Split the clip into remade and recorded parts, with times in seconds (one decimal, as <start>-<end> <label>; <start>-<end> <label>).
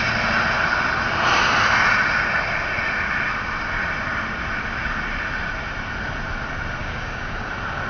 0.0-6.8 recorded; 6.8-7.5 remade; 7.5-7.9 recorded